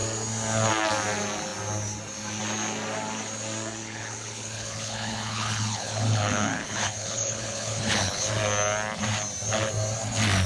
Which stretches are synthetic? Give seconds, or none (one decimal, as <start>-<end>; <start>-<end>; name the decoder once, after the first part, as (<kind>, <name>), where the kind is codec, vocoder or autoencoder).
3.8-8.3 (codec, HILCodec)